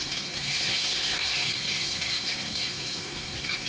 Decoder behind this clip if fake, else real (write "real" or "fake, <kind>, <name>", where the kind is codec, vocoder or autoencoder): fake, codec, SNAC